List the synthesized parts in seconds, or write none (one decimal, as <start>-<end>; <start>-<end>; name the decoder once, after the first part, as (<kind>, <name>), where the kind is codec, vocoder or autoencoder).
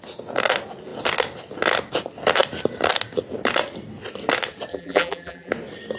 4.7-5.5 (vocoder, BigVGAN v2)